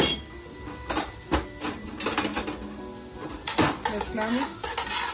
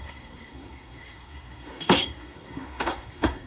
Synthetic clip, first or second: second